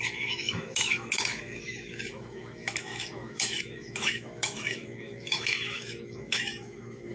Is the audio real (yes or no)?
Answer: no